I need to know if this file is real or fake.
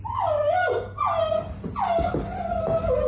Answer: real